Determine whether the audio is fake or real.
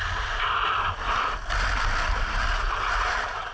real